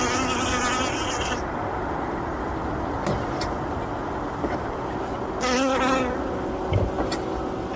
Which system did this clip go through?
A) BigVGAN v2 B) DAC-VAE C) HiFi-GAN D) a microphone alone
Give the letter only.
D